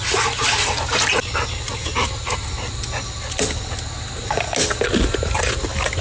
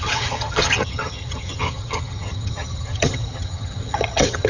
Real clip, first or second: first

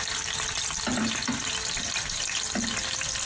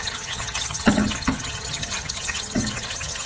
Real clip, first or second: first